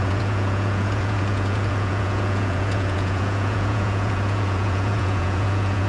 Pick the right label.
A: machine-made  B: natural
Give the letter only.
A